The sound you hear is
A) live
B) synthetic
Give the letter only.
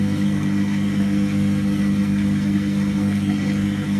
B